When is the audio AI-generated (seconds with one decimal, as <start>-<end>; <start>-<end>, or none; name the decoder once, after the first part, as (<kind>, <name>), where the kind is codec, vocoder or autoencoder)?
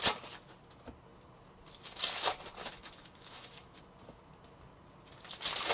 2.6-3.8 (autoencoder, DAC-VAE)